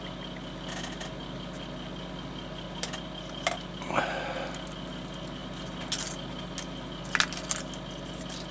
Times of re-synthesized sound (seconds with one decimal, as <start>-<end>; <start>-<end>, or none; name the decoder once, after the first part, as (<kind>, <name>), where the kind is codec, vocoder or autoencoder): none